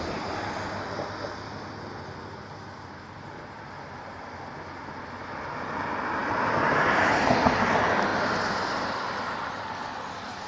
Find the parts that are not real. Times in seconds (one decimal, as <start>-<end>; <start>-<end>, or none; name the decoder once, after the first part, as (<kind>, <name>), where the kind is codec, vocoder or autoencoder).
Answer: none